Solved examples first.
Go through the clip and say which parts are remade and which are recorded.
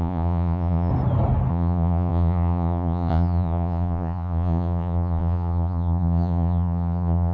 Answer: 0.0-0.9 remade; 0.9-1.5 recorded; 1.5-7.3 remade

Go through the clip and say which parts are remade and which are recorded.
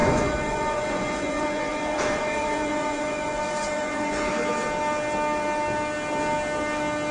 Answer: 0.0-4.3 remade; 4.3-7.1 recorded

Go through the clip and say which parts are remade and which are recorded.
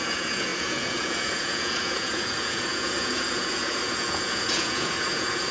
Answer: 0.0-5.5 remade